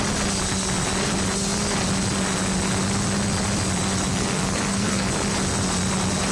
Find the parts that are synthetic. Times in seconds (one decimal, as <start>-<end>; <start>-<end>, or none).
4.1-5.1